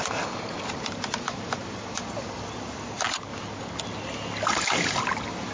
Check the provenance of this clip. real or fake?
real